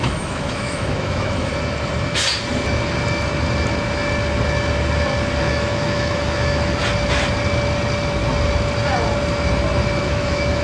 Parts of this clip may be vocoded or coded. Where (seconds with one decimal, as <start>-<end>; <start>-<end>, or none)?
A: 0.0-1.5; 5.4-6.8; 10.0-10.6